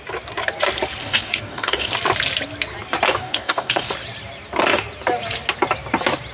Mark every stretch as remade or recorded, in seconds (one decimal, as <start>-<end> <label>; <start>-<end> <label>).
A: 0.0-1.0 recorded; 1.0-1.9 remade; 1.9-3.2 recorded; 3.2-3.9 remade; 3.9-6.3 recorded